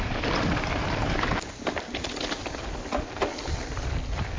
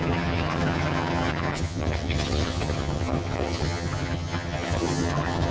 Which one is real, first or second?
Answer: first